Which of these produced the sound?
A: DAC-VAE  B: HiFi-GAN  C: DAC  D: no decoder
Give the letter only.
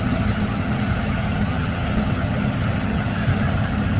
B